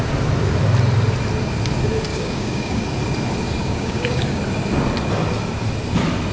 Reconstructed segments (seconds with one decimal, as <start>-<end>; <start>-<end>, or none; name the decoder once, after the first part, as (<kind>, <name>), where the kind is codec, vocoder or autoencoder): 2.1-2.8 (codec, DAC); 3.6-4.4